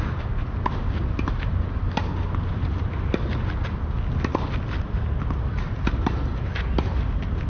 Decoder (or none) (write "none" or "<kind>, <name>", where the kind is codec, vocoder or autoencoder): none